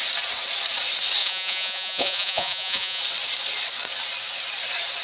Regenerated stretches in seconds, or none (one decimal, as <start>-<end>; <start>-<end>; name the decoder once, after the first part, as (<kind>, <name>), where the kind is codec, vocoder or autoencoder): 1.2-3.0 (vocoder, Vocos)